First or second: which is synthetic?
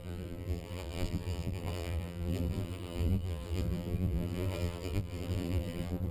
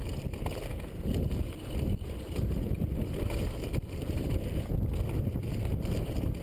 first